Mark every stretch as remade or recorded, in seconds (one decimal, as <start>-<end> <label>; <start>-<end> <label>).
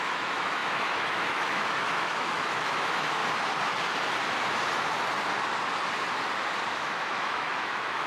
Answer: 0.0-3.2 remade; 3.2-6.7 recorded; 6.7-8.1 remade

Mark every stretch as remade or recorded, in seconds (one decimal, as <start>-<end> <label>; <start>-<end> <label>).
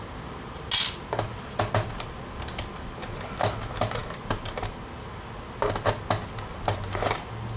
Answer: 0.0-7.6 recorded